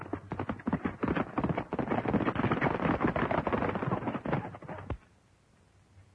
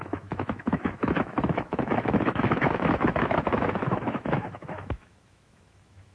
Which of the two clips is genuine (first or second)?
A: first